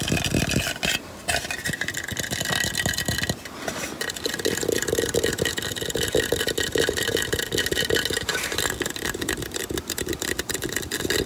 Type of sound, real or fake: real